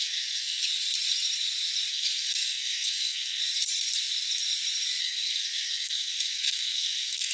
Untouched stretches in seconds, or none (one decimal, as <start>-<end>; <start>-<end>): 0.6-1.9; 3.4-5.0